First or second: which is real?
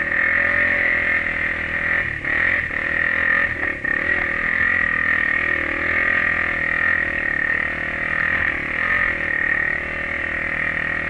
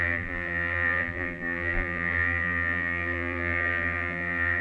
first